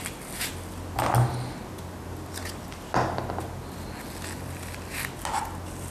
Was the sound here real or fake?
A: real